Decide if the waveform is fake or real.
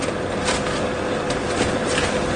real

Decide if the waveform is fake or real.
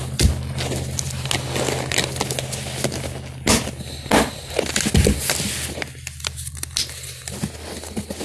real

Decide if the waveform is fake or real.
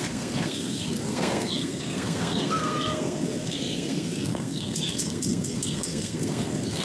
fake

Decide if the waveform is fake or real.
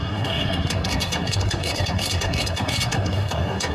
fake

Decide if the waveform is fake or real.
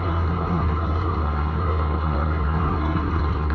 fake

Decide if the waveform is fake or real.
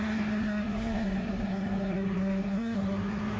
fake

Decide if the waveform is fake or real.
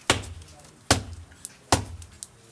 real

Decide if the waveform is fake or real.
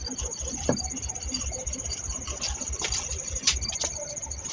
real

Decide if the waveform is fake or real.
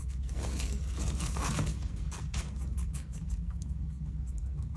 fake